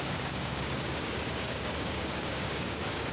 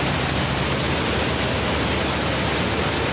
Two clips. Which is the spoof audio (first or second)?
first